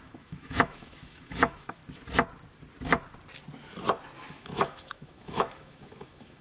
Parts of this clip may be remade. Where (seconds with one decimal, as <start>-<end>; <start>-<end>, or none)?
0.0-1.8; 4.3-6.4